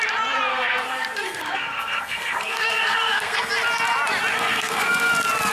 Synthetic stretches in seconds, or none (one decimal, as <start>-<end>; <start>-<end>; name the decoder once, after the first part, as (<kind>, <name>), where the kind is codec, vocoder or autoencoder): 0.5-3.5 (codec, SNAC); 4.3-5.1

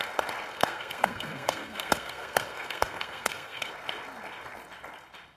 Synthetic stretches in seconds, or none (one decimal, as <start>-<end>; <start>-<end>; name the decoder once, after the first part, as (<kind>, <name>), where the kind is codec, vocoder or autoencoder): 0.5-3.7 (codec, SNAC)

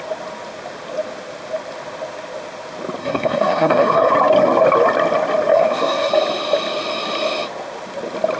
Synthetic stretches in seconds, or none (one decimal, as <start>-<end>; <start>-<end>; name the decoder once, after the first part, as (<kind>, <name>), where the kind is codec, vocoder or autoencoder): 3.0-4.1 (codec, SNAC); 5.5-6.1

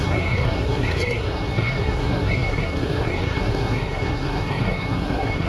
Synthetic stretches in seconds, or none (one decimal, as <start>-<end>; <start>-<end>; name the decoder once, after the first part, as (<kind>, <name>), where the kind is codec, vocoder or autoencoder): 0.0-5.5 (codec, SNAC)

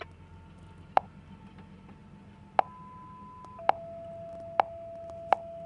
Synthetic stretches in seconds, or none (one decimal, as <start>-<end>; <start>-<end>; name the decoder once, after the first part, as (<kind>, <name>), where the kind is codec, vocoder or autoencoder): none

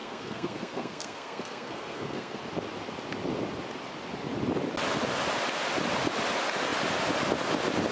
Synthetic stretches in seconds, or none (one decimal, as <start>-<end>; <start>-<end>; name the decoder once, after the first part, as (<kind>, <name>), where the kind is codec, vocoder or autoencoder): 0.0-2.4 (codec, SNAC)

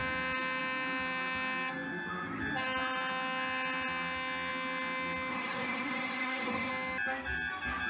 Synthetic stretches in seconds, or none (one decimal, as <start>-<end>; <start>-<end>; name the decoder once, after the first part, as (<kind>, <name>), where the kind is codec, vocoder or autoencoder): 5.3-6.7 (codec, SNAC)

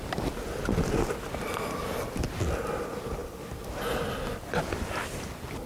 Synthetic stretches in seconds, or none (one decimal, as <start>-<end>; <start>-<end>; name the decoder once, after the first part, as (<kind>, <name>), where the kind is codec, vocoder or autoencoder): none